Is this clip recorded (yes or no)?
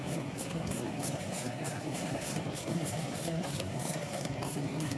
no